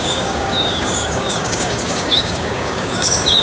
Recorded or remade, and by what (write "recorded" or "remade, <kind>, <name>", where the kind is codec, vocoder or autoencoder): remade, codec, DAC